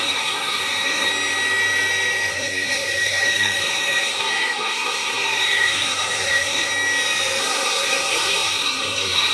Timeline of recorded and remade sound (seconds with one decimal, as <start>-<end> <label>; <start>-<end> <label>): 0.0-1.1 remade; 1.1-2.3 recorded; 2.3-6.7 remade; 6.7-7.4 recorded; 7.4-9.3 remade